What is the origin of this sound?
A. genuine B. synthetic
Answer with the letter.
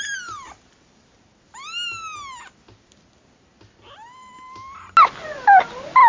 A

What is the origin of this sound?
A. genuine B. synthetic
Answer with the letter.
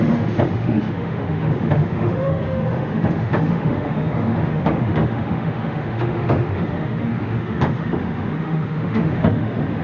B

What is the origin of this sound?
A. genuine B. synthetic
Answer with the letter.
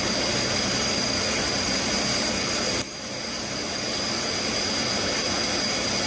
A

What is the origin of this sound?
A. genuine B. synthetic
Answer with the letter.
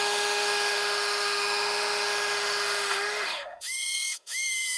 B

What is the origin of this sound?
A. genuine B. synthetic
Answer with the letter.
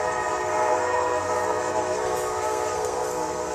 B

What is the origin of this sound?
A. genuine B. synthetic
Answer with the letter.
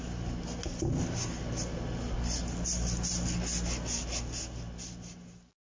A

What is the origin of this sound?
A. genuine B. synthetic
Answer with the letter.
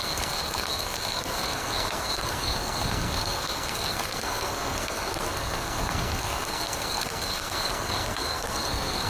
B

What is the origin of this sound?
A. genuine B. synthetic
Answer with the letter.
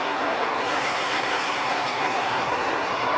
B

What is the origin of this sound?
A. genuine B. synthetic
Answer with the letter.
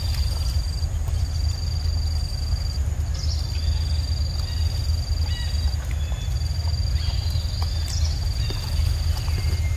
A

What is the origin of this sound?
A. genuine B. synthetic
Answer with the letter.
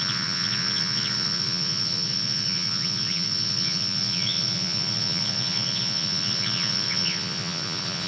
B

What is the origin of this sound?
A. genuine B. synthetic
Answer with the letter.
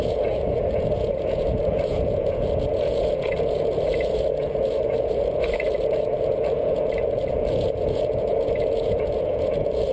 B